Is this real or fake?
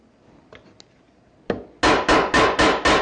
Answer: real